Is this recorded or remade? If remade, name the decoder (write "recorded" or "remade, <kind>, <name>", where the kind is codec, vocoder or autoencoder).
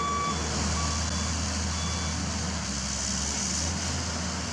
recorded